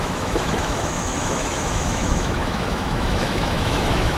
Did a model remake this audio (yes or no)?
yes